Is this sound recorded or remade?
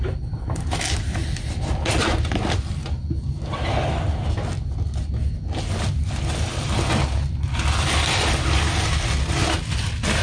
recorded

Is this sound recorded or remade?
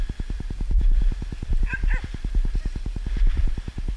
remade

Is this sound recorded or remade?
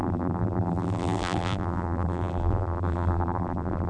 remade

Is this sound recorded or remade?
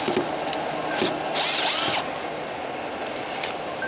recorded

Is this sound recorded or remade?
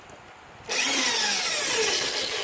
recorded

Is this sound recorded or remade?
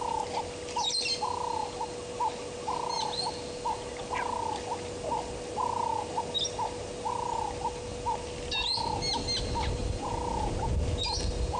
recorded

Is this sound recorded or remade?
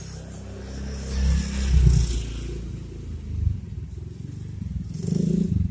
recorded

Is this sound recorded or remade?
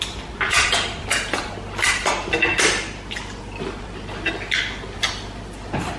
recorded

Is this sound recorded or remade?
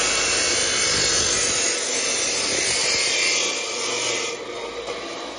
recorded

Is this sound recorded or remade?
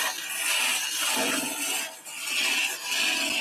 recorded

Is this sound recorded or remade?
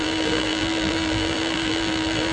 remade